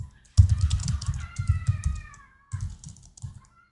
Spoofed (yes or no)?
no